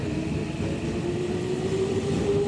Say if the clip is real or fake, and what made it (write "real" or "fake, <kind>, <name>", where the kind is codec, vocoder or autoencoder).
real